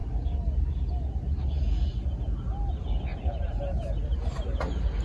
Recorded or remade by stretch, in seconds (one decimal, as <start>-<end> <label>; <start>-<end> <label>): 0.0-3.1 recorded; 3.1-3.6 remade; 3.6-5.0 recorded